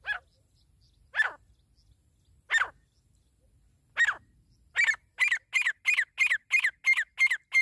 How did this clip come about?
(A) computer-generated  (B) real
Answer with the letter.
B